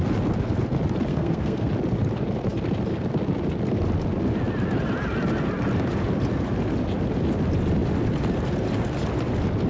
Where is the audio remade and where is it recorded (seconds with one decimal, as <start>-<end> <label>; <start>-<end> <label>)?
0.0-1.1 recorded; 1.1-1.7 remade; 1.7-9.7 recorded